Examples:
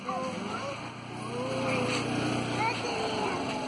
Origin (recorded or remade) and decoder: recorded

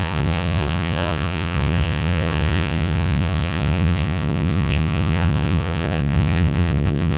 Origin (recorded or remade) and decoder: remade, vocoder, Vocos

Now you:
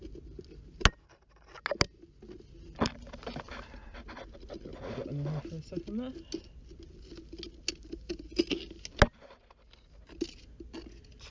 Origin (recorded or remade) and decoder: recorded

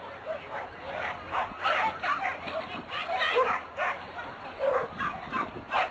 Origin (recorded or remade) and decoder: recorded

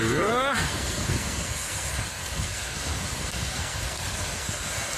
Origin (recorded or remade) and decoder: remade, codec, SNAC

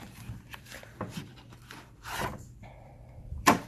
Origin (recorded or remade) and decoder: remade, vocoder, BigVGAN v2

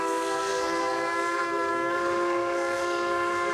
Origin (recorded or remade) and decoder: remade, codec, SNAC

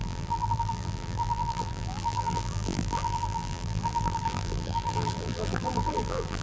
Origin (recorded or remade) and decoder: remade, vocoder, BigVGAN v2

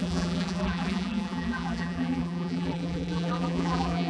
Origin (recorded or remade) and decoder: remade, vocoder, BigVGAN v2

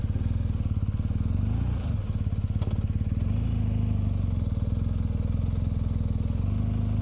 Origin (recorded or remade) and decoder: recorded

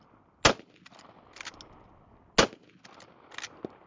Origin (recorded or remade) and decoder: recorded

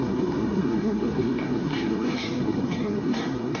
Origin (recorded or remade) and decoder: remade, codec, SNAC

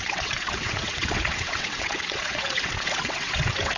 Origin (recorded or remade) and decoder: remade, vocoder, WaveNeXt